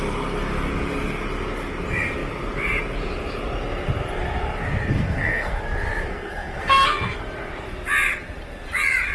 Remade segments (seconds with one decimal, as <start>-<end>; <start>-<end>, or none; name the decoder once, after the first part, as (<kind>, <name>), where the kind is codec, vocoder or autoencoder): 4.9-5.6 (codec, SNAC); 6.1-7.2